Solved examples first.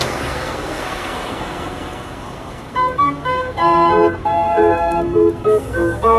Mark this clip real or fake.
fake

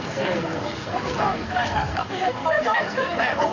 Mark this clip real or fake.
fake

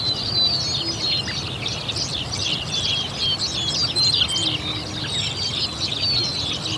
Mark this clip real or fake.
real